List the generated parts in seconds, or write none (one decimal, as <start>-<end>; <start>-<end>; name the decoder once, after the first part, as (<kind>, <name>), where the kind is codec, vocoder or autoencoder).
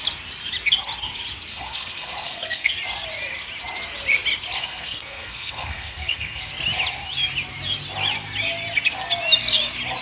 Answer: 1.5-2.7 (codec, SNAC); 4.6-6.4